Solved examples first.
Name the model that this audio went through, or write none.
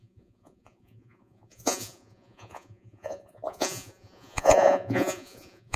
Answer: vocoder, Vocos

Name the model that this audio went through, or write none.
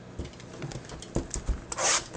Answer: none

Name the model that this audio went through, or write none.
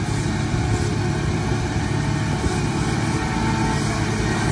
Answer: none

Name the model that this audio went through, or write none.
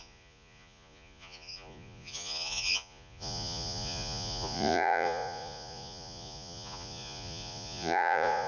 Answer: vocoder, Vocos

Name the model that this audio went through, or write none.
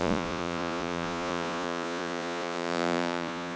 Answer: vocoder, Vocos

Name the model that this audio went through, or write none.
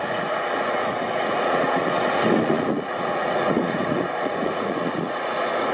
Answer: vocoder, Vocos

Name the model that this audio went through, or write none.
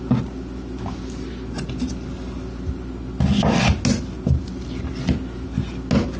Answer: none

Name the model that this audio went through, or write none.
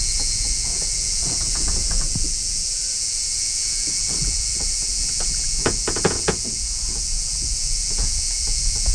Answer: vocoder, Vocos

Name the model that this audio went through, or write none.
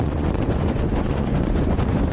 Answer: vocoder, Vocos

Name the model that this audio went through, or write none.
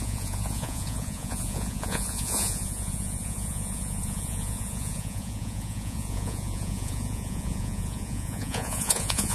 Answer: vocoder, Vocos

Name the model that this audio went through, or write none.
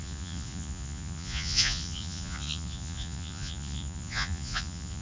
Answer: vocoder, Vocos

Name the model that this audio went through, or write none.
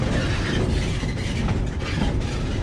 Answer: none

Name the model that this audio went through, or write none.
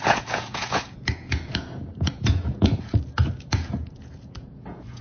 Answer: vocoder, Vocos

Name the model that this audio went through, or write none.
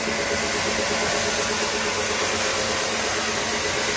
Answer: none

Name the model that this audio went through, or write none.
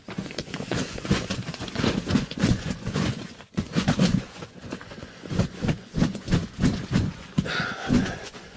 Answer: vocoder, Vocos